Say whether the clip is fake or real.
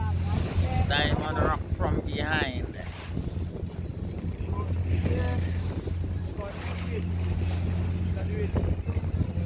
real